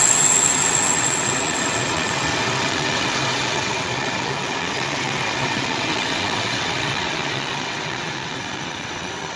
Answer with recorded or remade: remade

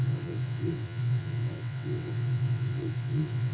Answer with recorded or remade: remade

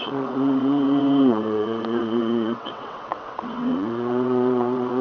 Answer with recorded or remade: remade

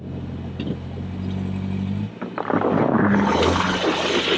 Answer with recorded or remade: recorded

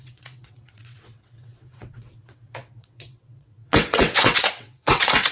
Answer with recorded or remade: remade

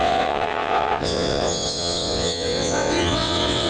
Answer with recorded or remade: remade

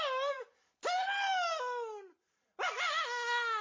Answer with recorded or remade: recorded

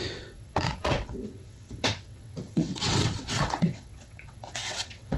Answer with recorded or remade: remade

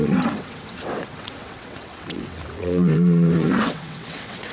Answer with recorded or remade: remade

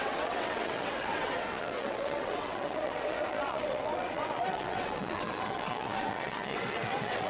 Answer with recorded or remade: remade